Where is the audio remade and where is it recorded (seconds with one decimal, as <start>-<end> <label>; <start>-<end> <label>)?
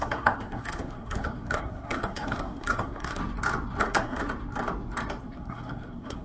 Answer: 0.0-3.2 remade; 3.2-3.8 recorded; 3.8-4.2 remade; 4.2-5.2 recorded; 5.2-6.2 remade